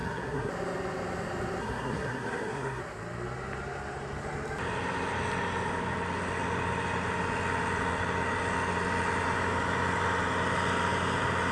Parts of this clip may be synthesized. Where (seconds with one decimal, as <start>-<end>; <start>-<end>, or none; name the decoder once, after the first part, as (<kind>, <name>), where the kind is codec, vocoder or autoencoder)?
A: 0.0-0.5 (codec, SNAC); 1.6-2.8